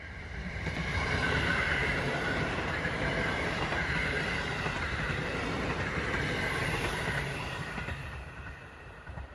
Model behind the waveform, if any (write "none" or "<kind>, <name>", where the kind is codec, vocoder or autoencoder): vocoder, BigVGAN v2